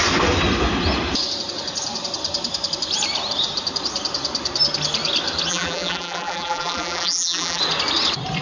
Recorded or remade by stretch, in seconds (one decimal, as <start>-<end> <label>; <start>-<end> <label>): 0.0-5.5 recorded; 5.5-7.6 remade; 7.6-8.4 recorded